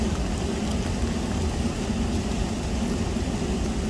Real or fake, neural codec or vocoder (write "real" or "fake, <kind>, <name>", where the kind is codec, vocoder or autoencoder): real